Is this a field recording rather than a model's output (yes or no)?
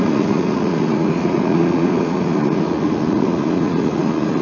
no